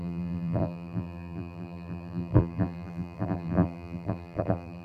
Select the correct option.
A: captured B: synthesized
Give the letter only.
B